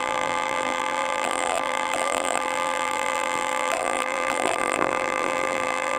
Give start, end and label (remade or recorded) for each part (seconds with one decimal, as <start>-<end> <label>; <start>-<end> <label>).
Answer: 0.0-6.0 remade